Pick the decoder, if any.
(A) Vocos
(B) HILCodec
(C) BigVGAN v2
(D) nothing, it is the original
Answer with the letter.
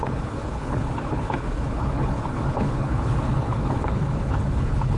B